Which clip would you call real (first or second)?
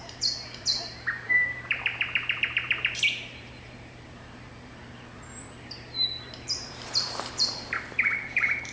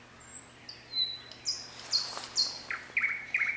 second